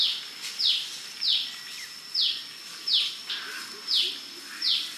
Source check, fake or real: real